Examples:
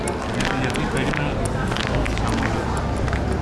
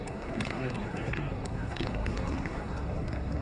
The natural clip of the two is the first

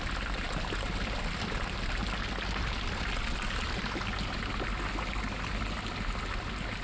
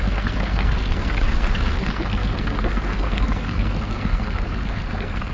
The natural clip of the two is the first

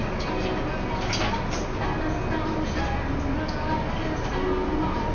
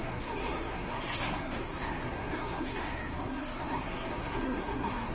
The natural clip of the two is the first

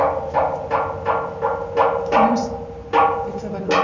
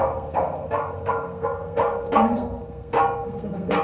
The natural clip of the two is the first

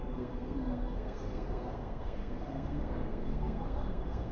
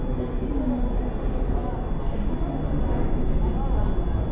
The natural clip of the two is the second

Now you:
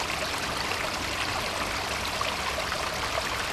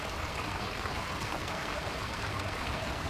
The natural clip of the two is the first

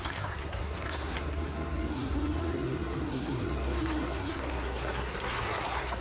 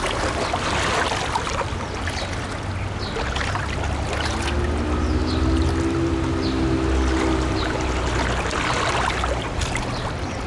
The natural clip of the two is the second